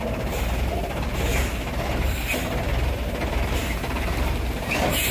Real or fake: real